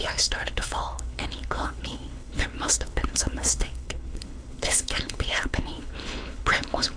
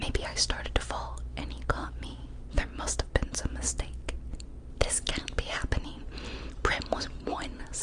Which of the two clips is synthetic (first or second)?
first